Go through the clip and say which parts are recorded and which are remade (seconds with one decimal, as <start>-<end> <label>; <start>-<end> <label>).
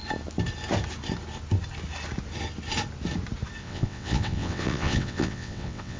0.0-3.6 recorded; 3.6-6.0 remade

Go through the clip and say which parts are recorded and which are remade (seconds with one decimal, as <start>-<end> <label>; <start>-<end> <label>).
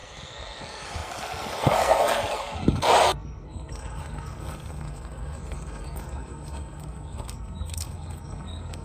0.0-8.8 remade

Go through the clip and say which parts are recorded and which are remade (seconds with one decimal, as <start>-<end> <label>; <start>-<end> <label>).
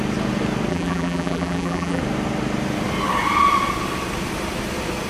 0.0-0.7 recorded; 0.7-2.0 remade; 2.0-5.1 recorded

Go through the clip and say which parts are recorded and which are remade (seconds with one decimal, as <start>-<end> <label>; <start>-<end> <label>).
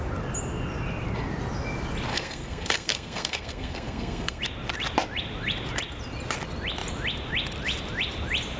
0.0-2.1 recorded; 2.1-4.4 remade; 4.4-8.6 recorded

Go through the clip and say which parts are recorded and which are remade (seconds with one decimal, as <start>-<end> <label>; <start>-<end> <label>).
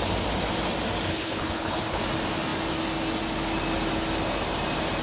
0.0-1.1 recorded; 1.1-2.0 remade; 2.0-5.0 recorded